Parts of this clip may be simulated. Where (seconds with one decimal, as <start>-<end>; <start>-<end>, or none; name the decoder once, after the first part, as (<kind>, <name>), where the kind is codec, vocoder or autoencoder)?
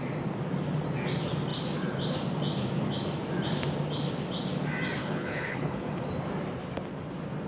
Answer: 5.0-6.0 (codec, HILCodec)